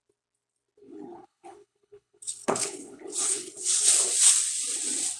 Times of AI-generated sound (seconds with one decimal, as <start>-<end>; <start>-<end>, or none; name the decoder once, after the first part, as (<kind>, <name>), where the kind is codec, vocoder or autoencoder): 0.8-3.9 (codec, HILCodec)

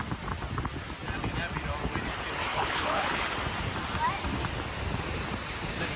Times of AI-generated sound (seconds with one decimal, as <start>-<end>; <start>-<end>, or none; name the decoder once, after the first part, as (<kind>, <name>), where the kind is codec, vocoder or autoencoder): 2.5-3.2 (codec, HILCodec)

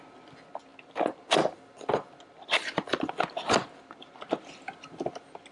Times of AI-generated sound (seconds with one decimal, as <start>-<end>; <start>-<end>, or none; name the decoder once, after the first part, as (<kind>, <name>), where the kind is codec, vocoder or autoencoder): none

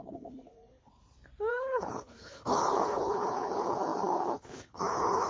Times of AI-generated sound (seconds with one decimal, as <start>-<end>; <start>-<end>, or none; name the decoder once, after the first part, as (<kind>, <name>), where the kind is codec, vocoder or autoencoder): 0.0-0.9 (codec, HILCodec); 1.5-5.3

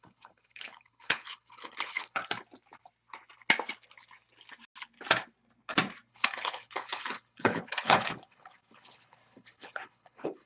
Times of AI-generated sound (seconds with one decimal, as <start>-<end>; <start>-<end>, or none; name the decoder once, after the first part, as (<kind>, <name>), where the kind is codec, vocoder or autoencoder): 0.0-2.2 (codec, HILCodec); 6.1-10.5